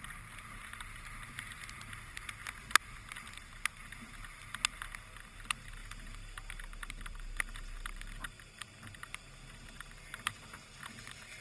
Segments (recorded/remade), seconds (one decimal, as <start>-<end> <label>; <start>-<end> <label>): 0.0-11.4 recorded